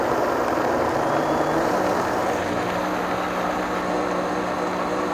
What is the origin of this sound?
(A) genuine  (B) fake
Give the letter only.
A